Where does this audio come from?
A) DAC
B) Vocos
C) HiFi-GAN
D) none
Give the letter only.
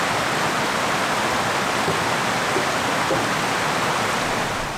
D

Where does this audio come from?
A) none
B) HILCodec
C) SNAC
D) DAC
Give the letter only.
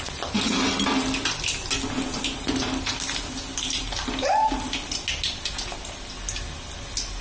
A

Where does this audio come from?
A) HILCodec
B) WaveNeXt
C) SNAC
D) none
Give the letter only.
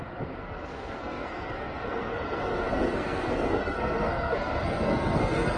C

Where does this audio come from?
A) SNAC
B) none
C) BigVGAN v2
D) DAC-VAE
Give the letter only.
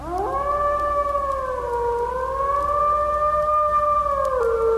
B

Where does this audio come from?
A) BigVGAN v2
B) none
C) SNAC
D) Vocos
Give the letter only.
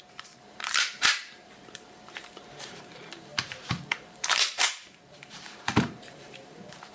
A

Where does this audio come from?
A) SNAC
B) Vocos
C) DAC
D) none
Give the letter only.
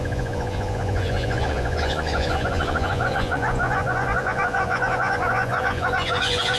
B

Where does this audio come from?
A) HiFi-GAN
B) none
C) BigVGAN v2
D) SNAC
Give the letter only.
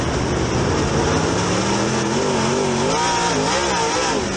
B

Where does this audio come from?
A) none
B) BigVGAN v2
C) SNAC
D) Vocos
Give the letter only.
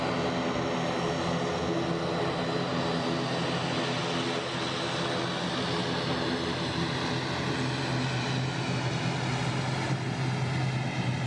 A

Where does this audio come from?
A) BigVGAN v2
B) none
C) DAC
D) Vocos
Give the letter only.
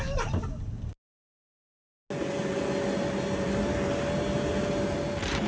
B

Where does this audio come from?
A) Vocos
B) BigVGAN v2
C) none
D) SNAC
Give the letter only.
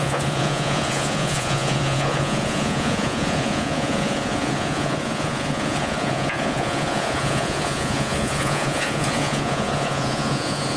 A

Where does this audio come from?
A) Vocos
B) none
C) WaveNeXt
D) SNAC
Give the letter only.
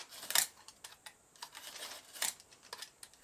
B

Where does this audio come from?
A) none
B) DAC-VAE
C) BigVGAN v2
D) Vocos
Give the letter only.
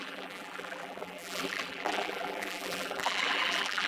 C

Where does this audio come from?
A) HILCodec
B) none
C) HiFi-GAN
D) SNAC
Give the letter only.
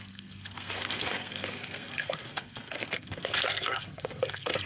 D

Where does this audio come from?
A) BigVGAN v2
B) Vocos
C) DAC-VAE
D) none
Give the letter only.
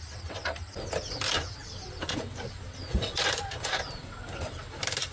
A